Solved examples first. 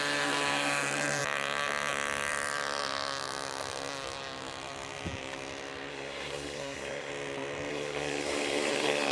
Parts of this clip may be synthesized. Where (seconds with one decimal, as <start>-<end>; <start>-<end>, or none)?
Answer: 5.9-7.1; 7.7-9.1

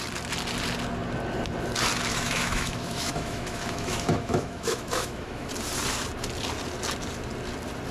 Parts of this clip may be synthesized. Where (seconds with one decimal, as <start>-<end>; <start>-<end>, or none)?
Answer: 2.1-5.5

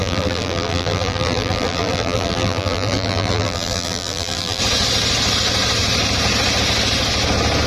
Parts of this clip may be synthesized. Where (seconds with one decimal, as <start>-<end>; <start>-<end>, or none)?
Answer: 0.0-4.6

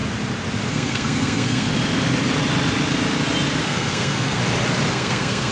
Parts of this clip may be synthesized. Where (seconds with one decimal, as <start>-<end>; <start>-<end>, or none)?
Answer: 0.7-1.7; 3.6-4.4; 4.9-5.5

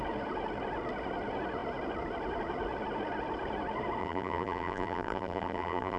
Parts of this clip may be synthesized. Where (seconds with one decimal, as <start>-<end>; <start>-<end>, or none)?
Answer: 4.0-6.0

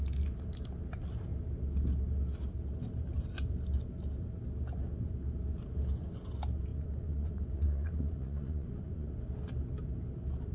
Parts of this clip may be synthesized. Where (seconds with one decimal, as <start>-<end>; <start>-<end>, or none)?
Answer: 6.7-9.1

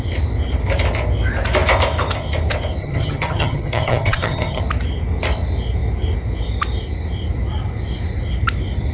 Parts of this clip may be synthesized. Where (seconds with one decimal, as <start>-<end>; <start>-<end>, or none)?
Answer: 2.8-4.6

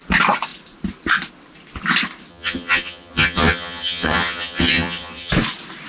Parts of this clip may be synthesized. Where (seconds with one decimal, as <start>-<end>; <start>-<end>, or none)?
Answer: 2.3-5.3